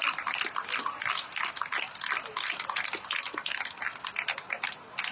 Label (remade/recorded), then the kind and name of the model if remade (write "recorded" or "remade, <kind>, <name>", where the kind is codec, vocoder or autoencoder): recorded